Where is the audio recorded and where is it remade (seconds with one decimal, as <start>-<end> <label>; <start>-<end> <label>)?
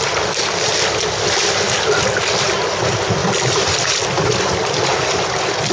0.0-5.7 recorded